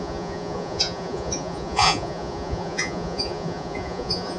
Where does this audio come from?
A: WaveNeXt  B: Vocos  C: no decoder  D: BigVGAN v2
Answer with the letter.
B